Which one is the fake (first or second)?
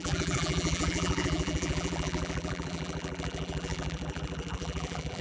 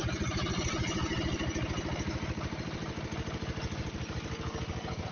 first